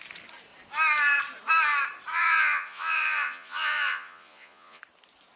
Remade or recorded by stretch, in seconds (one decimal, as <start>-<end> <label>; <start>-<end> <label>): 0.0-2.1 recorded; 2.1-4.8 remade; 4.8-5.4 recorded